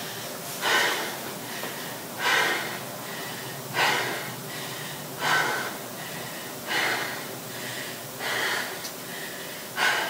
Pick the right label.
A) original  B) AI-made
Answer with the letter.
A